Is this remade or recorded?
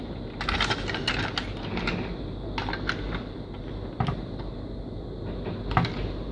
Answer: recorded